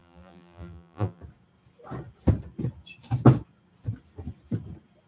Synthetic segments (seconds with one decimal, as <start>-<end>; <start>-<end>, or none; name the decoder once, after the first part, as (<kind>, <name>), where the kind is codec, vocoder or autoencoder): 0.0-1.2 (vocoder, BigVGAN v2)